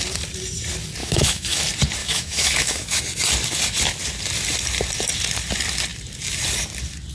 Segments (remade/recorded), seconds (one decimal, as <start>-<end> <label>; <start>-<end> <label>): 0.0-1.0 recorded; 1.0-1.6 remade; 1.6-2.0 recorded; 2.0-3.0 remade; 3.0-7.1 recorded